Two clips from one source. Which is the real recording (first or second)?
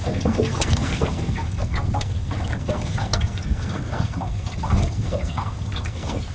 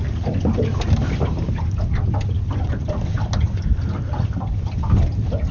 second